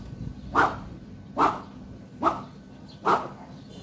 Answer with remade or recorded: recorded